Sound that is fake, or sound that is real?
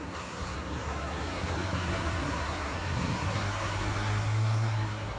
fake